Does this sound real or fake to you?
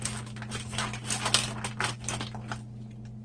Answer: real